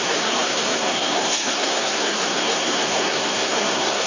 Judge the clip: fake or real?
fake